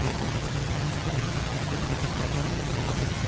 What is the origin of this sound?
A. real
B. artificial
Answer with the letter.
B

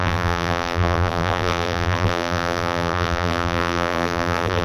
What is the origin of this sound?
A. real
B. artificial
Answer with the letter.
B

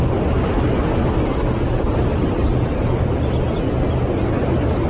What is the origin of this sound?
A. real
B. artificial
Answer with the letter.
A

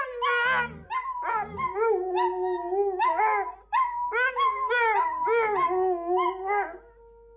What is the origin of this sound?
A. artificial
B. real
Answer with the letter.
B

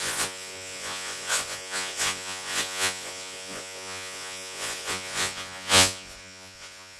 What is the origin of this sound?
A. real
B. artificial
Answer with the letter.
B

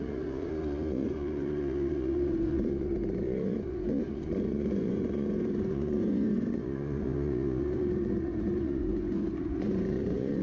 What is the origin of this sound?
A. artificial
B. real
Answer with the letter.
A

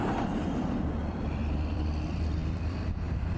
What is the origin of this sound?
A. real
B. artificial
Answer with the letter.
B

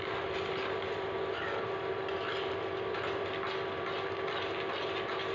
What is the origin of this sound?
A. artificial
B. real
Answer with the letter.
A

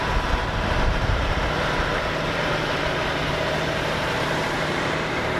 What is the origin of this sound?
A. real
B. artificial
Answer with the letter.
B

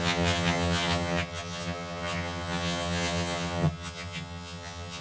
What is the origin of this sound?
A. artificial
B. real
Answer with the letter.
A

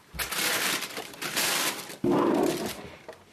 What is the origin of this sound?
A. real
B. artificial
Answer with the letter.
B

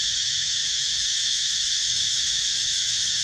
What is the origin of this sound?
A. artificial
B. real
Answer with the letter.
A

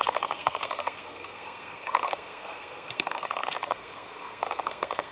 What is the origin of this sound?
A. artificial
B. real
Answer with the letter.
A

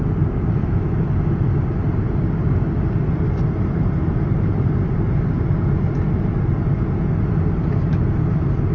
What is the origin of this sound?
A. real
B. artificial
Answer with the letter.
A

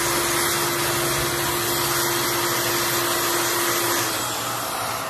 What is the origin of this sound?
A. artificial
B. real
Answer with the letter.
B